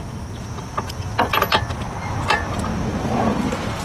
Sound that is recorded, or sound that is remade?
recorded